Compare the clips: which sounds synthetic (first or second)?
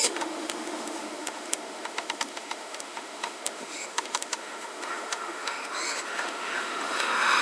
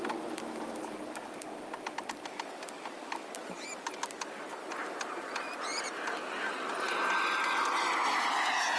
first